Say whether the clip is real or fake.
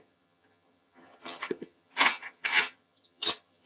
fake